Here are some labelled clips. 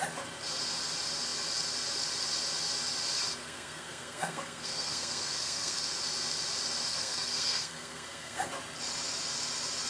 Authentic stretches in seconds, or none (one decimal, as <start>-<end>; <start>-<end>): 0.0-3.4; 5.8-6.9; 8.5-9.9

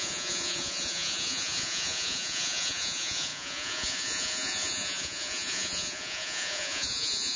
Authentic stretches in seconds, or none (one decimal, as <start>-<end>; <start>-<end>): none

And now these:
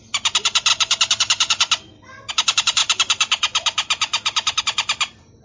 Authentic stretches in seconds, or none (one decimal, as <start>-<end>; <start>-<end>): 0.0-5.4

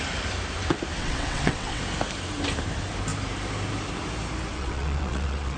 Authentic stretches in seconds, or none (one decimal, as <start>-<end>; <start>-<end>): 0.0-1.0; 1.8-4.5

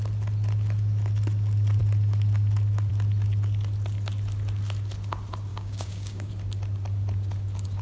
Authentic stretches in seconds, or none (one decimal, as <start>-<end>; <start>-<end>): 0.0-5.5; 6.3-7.8

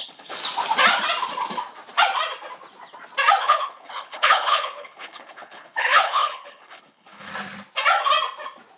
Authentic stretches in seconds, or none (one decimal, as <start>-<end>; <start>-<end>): 0.4-3.4; 7.3-8.8